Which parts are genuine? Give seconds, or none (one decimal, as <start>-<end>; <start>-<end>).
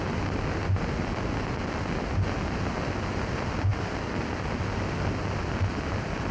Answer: 0.0-6.3